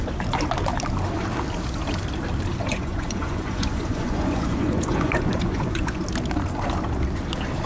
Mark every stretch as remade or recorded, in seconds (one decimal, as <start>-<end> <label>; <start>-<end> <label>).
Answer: 0.0-2.6 recorded; 2.6-6.0 remade; 6.0-7.7 recorded

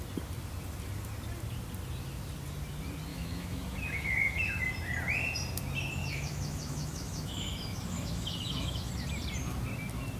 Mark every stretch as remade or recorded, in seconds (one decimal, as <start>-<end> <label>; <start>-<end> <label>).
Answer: 0.0-3.1 recorded; 3.1-4.6 remade; 4.6-6.0 recorded; 6.0-8.9 remade; 8.9-10.2 recorded

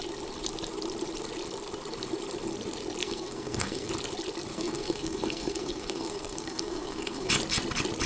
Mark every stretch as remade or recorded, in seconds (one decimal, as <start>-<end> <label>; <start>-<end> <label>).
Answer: 0.0-3.0 recorded; 3.0-3.9 remade; 3.9-4.5 recorded; 4.5-7.3 remade; 7.3-8.1 recorded